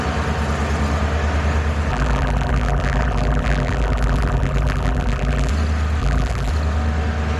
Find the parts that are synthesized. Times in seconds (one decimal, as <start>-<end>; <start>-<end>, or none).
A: 1.9-5.5; 6.0-6.5